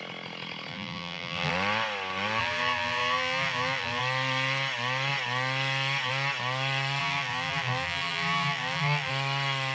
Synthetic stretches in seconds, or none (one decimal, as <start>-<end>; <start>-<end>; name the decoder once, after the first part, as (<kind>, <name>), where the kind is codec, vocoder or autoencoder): 0.7-1.5 (vocoder, BigVGAN v2); 2.4-4.0; 7.0-9.1